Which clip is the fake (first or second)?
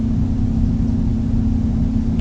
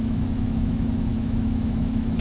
second